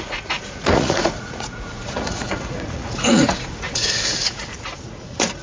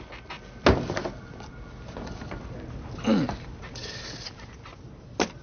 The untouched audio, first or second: second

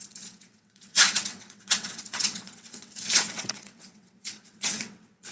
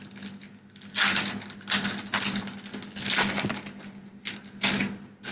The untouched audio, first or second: second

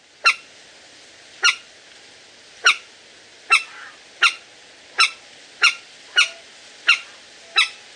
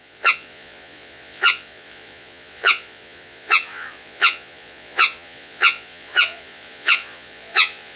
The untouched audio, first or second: first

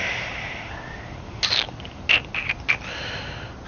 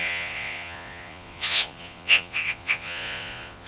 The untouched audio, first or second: first